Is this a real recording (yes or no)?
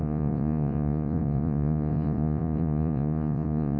no